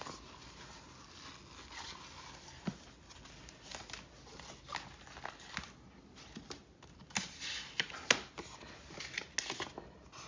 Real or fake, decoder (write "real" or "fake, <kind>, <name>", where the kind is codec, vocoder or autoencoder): real